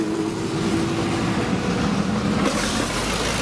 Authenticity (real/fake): real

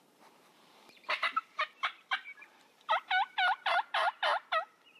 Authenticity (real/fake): fake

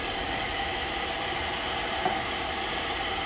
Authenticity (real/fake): real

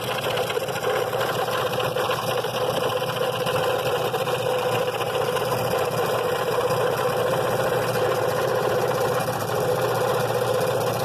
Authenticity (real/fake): real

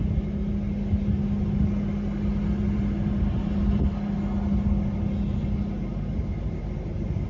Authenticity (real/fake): real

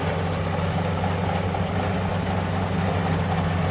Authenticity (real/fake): real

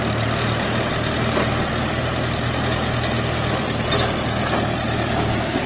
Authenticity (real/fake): real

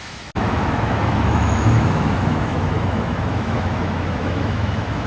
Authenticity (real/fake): fake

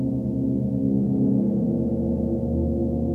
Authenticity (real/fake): real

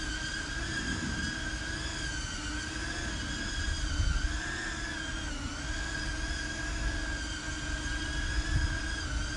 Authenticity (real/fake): real